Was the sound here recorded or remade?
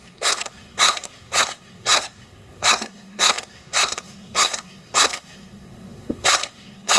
remade